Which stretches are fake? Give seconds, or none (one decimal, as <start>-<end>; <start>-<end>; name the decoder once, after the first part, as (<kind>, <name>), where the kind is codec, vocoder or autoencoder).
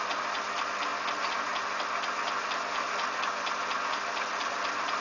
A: none